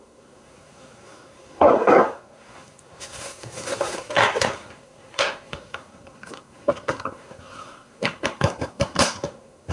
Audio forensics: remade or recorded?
remade